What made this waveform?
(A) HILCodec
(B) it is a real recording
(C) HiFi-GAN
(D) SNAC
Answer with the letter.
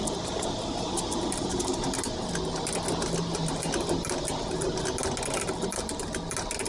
B